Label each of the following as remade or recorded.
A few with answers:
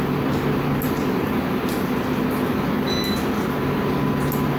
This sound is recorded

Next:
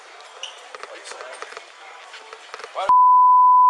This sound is recorded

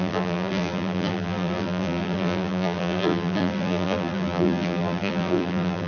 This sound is remade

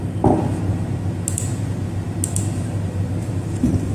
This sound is recorded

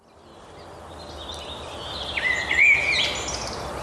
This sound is recorded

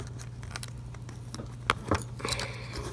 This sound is recorded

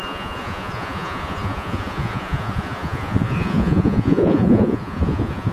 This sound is remade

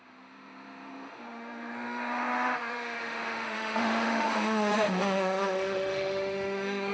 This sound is remade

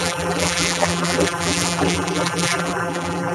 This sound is remade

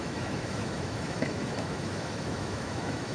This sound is remade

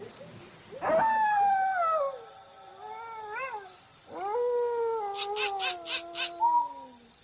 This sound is recorded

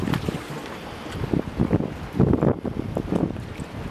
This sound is recorded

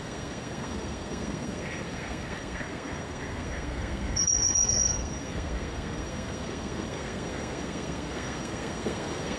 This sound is remade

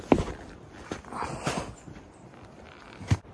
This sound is remade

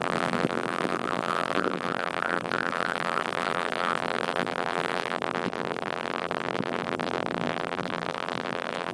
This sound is remade